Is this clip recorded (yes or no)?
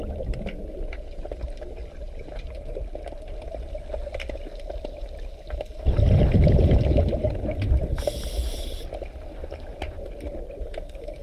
yes